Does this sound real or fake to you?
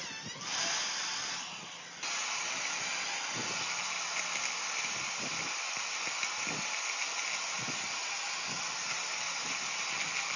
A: real